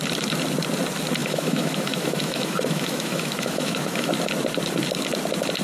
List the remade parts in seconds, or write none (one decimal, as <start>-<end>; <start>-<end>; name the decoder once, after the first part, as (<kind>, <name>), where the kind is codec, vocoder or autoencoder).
1.2-4.1 (autoencoder, DAC-VAE)